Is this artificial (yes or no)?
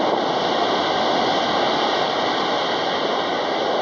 no